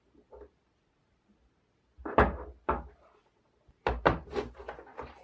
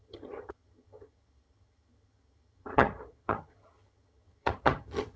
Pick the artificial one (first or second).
second